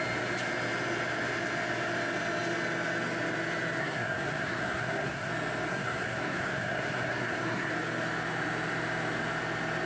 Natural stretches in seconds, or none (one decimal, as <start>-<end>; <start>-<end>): 0.0-3.8; 5.3-5.7; 7.7-9.9